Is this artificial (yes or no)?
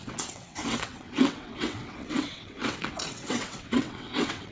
yes